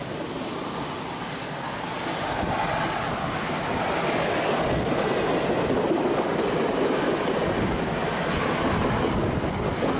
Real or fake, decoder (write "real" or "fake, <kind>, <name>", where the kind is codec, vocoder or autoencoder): real